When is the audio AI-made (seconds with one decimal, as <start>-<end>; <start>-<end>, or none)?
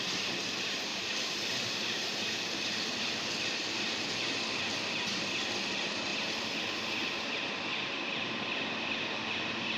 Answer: 0.9-4.6; 6.1-7.3